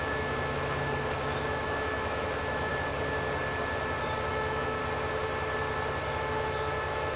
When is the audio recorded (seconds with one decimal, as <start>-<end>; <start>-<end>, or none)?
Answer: 2.7-4.3; 4.8-6.2